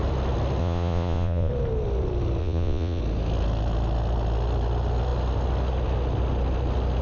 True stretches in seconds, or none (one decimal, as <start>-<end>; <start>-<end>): 0.0-0.6; 1.5-2.4; 3.0-7.0